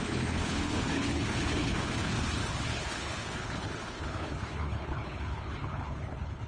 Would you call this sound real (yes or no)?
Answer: no